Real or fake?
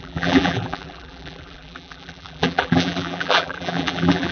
fake